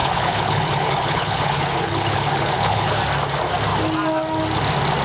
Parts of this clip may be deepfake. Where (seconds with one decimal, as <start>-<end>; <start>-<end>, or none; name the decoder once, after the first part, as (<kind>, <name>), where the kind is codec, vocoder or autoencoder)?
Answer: 0.0-3.0 (codec, HILCodec)

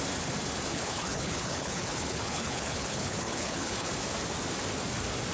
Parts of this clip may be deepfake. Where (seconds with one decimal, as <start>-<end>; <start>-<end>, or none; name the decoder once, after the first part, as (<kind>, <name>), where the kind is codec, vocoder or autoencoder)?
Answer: 0.7-3.9 (codec, HILCodec)